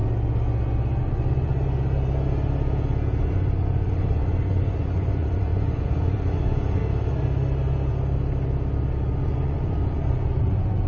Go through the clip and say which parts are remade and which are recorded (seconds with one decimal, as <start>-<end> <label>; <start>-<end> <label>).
0.0-1.0 recorded; 1.0-1.5 remade; 1.5-3.2 recorded; 3.2-6.8 remade; 6.8-9.2 recorded; 9.2-10.9 remade